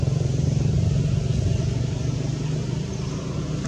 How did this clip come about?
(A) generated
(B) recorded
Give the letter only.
B